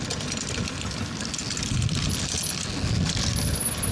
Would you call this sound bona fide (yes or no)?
yes